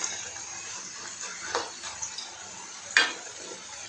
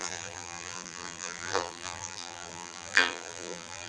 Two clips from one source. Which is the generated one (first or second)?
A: second